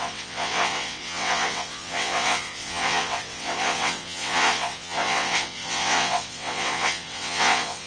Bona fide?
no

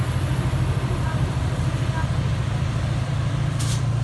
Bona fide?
no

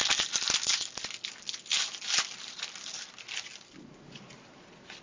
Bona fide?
yes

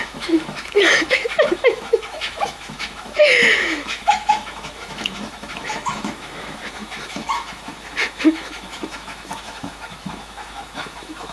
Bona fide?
no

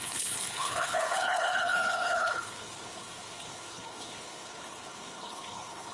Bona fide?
no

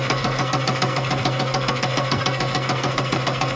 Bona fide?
no